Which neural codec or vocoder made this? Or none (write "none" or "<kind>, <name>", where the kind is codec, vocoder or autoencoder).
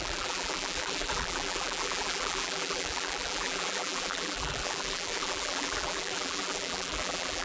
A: vocoder, BigVGAN v2